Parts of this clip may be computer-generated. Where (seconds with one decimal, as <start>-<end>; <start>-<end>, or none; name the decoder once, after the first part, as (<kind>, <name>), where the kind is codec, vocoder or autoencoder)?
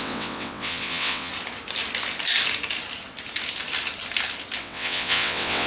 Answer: 0.0-1.3 (vocoder, WaveNeXt); 4.6-5.7